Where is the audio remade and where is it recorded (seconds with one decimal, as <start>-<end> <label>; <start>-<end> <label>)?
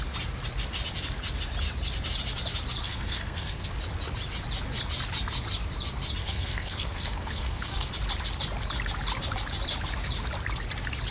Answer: 0.0-2.8 recorded; 2.8-3.7 remade; 3.7-6.2 recorded; 6.2-7.9 remade; 7.9-11.1 recorded